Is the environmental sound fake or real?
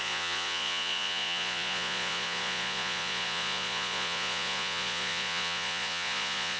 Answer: fake